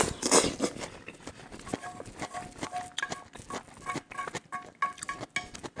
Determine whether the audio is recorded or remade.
recorded